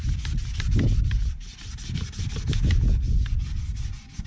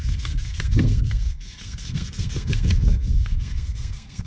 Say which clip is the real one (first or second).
first